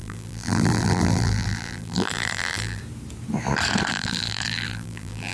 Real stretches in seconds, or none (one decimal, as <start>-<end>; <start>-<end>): 2.8-3.9